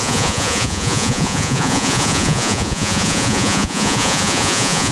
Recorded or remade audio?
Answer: remade